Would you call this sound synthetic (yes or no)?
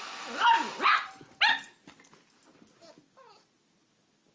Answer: no